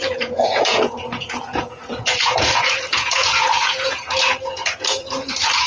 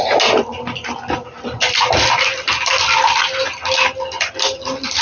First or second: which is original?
second